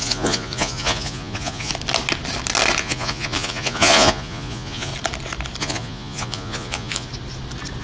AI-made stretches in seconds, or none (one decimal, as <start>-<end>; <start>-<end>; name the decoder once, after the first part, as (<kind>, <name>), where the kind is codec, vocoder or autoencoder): 0.0-1.7 (vocoder, Vocos); 2.8-4.9; 5.6-7.1